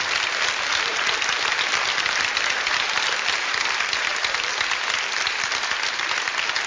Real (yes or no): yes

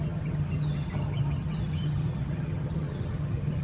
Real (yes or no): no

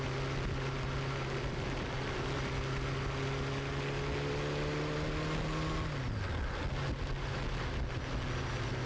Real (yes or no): yes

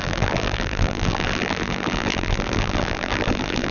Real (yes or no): no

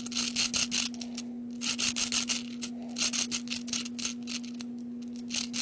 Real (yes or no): yes